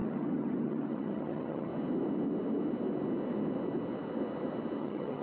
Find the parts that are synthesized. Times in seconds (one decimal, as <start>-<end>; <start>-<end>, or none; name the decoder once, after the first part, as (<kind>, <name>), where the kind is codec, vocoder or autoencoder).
0.0-1.7 (vocoder, HiFi-GAN); 4.8-5.2